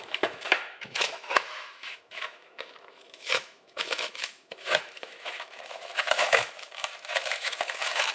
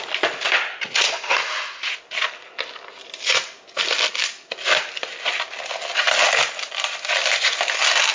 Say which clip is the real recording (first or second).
second